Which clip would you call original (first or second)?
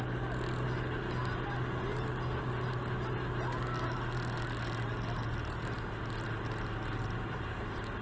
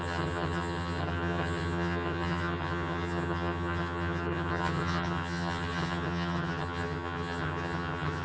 first